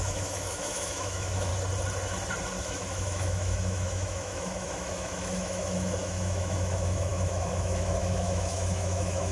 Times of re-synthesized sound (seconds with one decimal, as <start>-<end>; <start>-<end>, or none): 0.0-1.5; 2.6-9.3